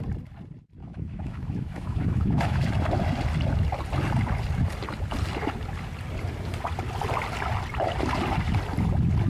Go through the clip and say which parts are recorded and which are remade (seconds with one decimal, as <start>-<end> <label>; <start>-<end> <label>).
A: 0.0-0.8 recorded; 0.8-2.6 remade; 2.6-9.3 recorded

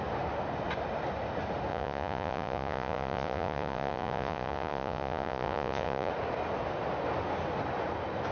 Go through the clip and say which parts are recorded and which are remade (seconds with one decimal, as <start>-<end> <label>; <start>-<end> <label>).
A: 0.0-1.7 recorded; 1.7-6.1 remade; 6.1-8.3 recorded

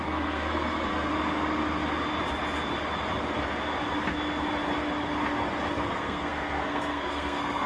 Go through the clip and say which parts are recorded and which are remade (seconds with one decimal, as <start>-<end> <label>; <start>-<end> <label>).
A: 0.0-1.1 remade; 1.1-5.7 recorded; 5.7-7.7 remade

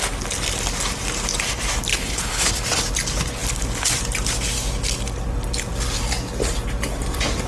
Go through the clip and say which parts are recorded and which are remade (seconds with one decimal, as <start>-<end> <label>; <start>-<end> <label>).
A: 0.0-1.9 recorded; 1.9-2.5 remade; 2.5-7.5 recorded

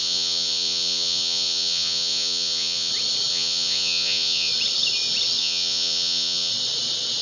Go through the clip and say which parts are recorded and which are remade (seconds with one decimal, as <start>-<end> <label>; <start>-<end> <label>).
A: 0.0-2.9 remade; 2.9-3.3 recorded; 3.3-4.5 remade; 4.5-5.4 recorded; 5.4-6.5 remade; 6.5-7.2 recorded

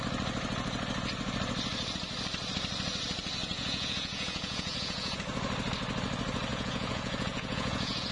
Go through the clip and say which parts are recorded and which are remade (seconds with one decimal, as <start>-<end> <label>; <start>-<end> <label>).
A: 0.0-3.4 recorded; 3.4-5.2 remade; 5.2-6.5 recorded; 6.5-8.1 remade